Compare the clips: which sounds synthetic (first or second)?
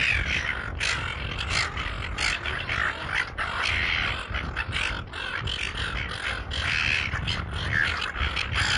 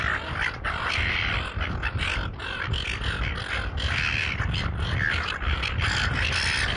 second